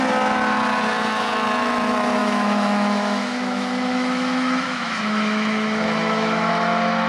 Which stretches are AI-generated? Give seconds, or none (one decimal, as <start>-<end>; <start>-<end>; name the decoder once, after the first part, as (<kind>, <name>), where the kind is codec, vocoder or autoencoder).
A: 2.2-6.5 (autoencoder, DAC-VAE)

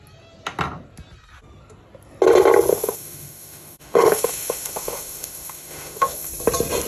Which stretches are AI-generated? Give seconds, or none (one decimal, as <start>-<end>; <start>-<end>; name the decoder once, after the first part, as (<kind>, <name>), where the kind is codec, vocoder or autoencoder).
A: 2.7-6.3 (autoencoder, DAC-VAE)

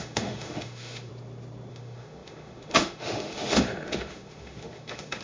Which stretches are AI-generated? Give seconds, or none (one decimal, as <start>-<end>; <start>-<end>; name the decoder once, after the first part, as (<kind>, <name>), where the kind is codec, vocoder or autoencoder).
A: 0.0-1.1 (autoencoder, DAC-VAE); 1.7-5.2